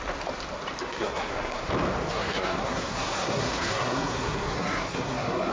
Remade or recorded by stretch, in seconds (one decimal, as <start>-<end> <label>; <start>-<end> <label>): 0.0-0.9 recorded; 0.9-1.6 remade; 1.6-2.1 recorded; 2.1-5.5 remade

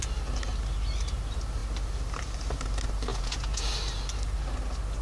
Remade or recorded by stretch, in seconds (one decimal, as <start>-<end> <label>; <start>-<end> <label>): 0.0-3.1 recorded; 3.1-3.7 remade; 3.7-5.0 recorded

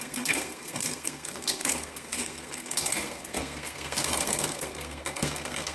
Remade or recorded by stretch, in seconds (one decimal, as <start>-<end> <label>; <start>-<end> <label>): 0.0-5.7 remade

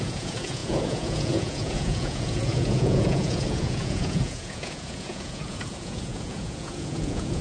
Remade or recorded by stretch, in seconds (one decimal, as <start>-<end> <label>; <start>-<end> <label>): 0.0-7.4 remade

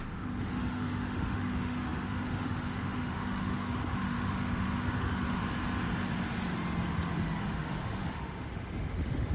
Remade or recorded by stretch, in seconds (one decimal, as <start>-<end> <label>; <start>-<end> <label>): 0.0-5.4 remade; 5.4-7.4 recorded; 7.4-9.3 remade

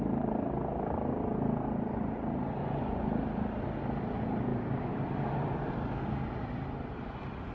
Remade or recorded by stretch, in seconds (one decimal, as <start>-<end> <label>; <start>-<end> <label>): 0.0-2.6 recorded; 2.6-3.1 remade; 3.1-7.5 recorded